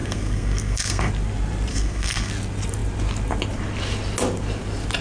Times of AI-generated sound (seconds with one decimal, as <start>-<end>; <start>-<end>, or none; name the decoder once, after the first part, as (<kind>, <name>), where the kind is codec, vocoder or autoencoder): 0.0-1.1 (codec, SNAC); 1.7-2.3